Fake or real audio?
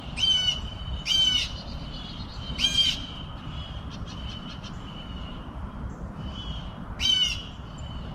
fake